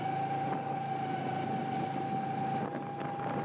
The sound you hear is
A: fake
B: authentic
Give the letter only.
B